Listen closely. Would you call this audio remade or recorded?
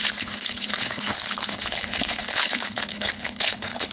remade